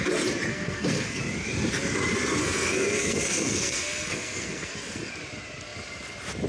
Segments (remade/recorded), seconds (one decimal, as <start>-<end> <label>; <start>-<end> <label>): 0.0-0.5 recorded; 0.5-1.2 remade; 1.2-2.4 recorded; 2.4-5.1 remade; 5.1-6.5 recorded